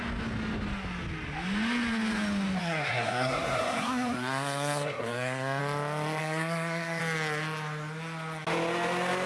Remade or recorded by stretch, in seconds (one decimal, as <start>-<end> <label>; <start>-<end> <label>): 0.0-2.6 recorded; 2.6-5.6 remade; 5.6-6.2 recorded; 6.2-7.0 remade; 7.0-9.3 recorded